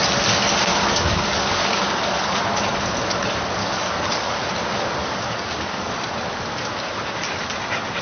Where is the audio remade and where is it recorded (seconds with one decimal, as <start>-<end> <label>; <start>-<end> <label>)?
0.0-0.7 recorded; 0.7-2.4 remade; 2.4-3.6 recorded; 3.6-4.5 remade; 4.5-5.0 recorded; 5.0-5.9 remade; 5.9-8.0 recorded